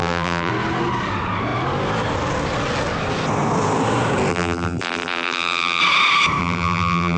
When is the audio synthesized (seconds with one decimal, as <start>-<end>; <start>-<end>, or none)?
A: 0.0-0.5; 4.3-5.8; 6.4-7.2